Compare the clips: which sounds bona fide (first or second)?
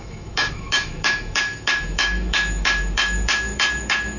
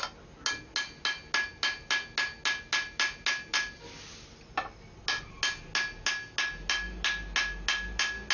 second